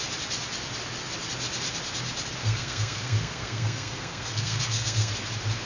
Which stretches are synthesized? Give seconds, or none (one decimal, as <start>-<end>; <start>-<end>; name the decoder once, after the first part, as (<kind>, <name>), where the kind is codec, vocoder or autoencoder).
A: 2.4-5.1 (codec, SNAC)